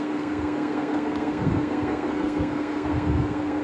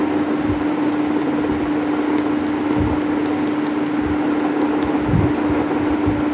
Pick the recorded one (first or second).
second